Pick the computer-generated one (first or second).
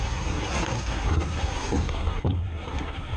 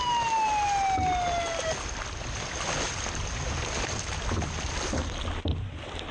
first